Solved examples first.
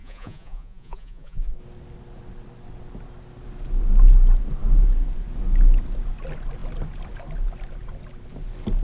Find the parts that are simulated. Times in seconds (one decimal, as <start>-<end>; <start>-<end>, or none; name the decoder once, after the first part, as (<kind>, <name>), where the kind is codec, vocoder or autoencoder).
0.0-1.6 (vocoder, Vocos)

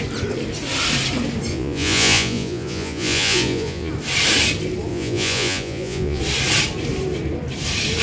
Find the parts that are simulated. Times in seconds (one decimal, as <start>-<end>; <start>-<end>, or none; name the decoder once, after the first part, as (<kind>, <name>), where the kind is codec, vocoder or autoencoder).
1.5-3.9 (vocoder, Vocos); 4.9-6.2

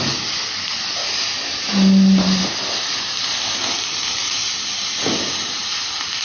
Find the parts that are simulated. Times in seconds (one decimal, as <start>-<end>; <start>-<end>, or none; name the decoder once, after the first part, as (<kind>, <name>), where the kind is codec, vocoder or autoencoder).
none

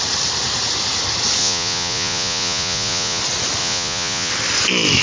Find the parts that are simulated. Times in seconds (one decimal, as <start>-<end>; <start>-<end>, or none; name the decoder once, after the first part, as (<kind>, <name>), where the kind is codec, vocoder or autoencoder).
1.4-3.2 (vocoder, Vocos); 3.6-4.3

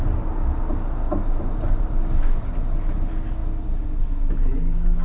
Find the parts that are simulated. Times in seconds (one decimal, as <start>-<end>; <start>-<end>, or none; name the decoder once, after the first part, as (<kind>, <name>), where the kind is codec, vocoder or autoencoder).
none